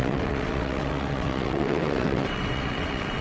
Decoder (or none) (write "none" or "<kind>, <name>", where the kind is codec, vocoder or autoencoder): vocoder, WaveNeXt